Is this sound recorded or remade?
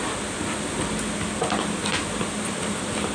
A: recorded